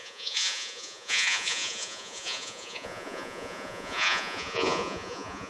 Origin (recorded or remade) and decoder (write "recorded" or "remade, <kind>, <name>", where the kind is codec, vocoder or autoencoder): remade, vocoder, Vocos